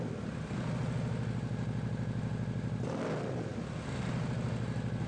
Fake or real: real